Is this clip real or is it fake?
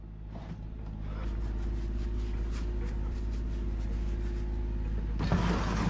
real